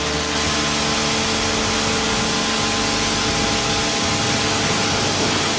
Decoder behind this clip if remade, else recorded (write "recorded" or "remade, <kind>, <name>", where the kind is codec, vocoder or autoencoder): recorded